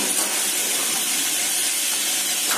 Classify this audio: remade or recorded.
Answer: recorded